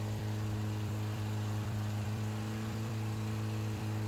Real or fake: fake